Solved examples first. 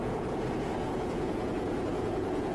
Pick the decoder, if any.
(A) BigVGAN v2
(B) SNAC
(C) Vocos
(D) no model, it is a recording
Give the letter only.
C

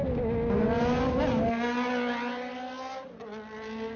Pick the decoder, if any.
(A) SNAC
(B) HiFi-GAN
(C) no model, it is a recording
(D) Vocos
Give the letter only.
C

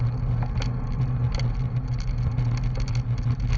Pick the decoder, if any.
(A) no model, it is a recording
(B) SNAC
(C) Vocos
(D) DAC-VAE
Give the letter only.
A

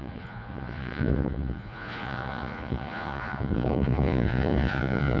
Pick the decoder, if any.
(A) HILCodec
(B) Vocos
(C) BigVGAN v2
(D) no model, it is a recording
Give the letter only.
B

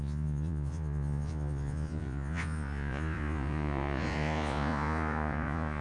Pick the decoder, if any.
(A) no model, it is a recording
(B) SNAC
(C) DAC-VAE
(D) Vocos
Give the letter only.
D